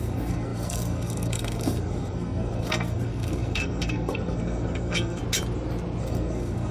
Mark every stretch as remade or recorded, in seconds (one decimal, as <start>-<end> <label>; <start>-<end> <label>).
0.0-5.2 remade; 5.2-6.0 recorded; 6.0-6.7 remade